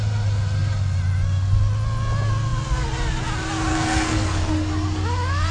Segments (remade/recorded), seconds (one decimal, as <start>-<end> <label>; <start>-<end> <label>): 0.0-3.7 recorded; 3.7-4.5 remade; 4.5-5.5 recorded